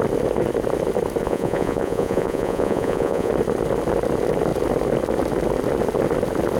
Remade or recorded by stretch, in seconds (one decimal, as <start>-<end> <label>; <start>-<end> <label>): 0.0-1.2 recorded; 1.2-3.3 remade; 3.3-6.6 recorded